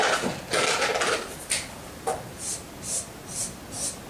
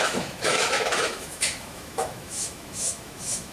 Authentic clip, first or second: first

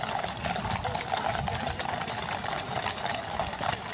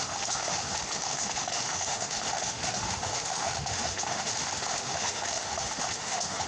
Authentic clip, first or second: first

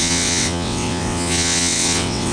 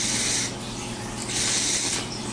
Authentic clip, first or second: second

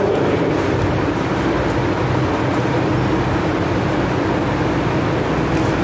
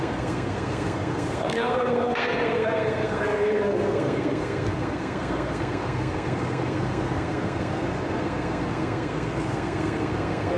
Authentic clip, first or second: first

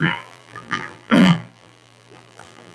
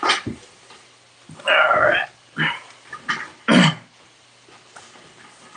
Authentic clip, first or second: second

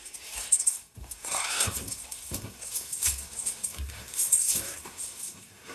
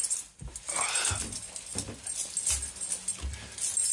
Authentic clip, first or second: second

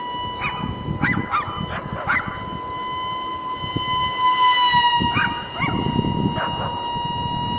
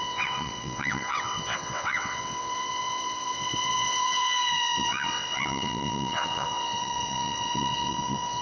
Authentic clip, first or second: first